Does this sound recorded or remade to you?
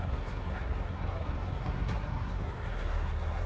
remade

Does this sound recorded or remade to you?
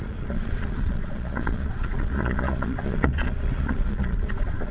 remade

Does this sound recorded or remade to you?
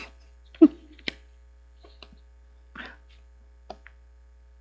recorded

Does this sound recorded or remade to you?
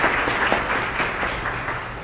recorded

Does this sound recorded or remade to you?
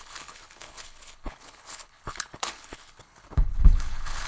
remade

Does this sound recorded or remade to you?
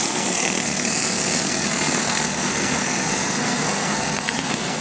remade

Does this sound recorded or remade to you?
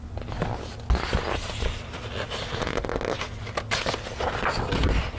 recorded